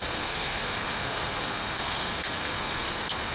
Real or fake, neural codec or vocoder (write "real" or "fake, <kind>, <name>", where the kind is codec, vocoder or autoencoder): fake, codec, SNAC